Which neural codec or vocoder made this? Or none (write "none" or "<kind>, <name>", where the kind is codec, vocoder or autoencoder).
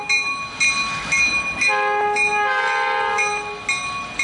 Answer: none